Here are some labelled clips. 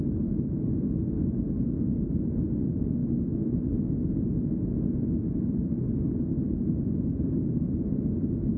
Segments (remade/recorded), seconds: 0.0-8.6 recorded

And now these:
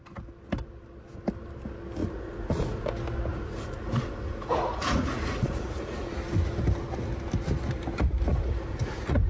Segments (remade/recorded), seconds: 0.0-2.0 recorded; 2.0-2.9 remade; 2.9-3.3 recorded; 3.3-6.1 remade; 6.1-8.3 recorded; 8.3-9.3 remade

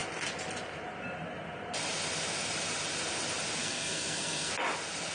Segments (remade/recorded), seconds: 0.0-3.6 recorded; 3.6-4.5 remade; 4.5-5.1 recorded

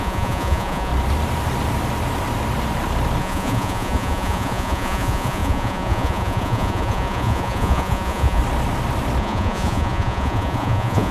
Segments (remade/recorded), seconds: 0.0-0.9 remade; 0.9-3.2 recorded; 3.2-8.4 remade; 8.4-9.2 recorded; 9.2-11.1 remade

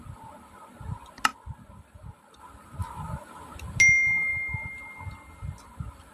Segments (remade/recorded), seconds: 0.0-6.1 recorded